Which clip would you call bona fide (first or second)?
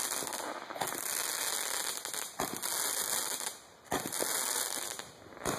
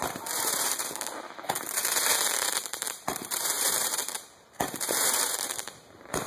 first